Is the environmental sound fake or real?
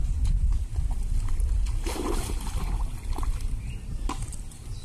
real